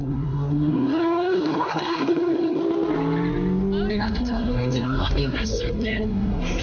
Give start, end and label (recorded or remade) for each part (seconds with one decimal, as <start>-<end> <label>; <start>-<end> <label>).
0.0-2.6 remade; 2.6-3.9 recorded; 3.9-6.6 remade